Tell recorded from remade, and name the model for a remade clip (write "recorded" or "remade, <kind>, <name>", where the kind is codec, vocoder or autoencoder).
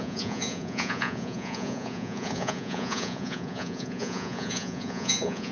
remade, vocoder, Vocos